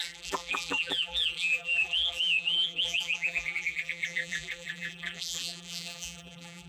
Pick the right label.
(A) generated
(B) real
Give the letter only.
A